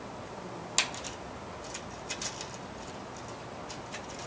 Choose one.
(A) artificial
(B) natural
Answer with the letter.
B